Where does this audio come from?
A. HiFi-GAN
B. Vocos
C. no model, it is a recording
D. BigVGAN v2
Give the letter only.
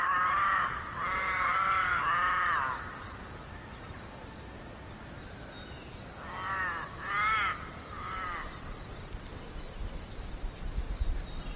C